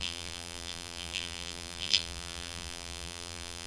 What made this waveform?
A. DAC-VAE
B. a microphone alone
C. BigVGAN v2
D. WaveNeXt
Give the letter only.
C